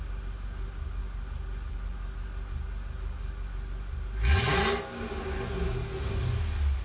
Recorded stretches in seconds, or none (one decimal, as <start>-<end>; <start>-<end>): 0.0-6.8